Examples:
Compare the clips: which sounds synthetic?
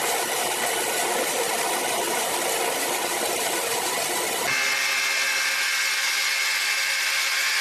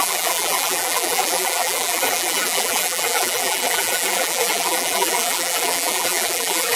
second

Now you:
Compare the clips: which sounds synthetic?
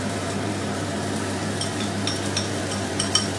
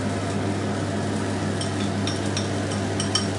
first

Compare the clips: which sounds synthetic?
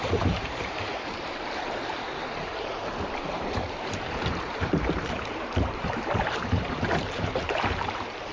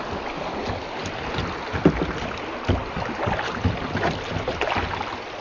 first